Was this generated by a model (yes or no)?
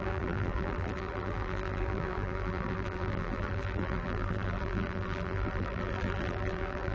yes